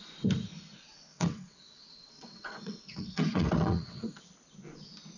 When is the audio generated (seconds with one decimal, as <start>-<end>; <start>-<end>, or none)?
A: 1.1-4.2